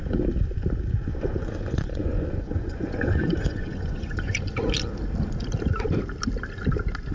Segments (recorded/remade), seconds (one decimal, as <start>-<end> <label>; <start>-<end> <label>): 0.0-1.1 recorded; 1.1-4.4 remade; 4.4-7.1 recorded